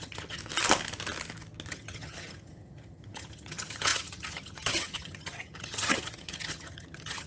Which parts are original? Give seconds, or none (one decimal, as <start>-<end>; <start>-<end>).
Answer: 0.4-1.7

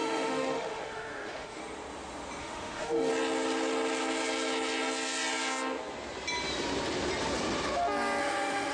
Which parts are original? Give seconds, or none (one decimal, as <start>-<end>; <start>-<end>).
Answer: 1.6-2.4; 3.1-8.2

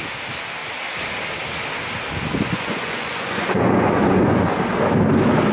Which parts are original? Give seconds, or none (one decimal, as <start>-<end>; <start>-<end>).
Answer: 0.0-2.3; 4.6-5.5

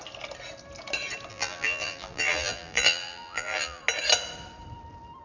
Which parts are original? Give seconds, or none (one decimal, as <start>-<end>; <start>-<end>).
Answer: 0.0-1.3; 3.8-5.2

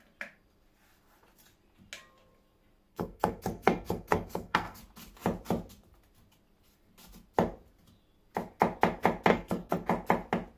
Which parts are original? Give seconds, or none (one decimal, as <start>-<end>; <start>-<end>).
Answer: 0.0-2.9; 4.8-9.3; 9.9-10.6